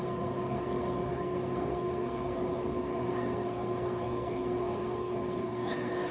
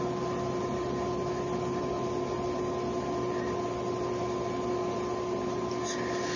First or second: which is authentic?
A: second